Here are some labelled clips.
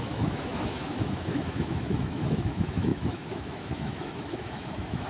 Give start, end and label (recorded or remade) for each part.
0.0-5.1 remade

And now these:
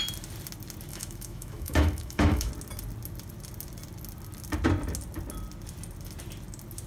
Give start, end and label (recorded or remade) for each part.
0.0-0.9 recorded; 0.9-2.5 remade; 2.5-6.9 recorded